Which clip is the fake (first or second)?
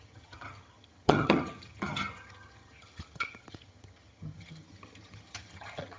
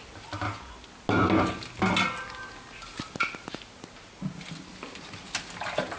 first